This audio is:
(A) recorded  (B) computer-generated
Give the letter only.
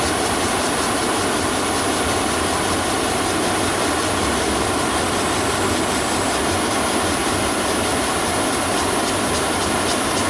A